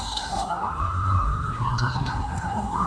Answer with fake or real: fake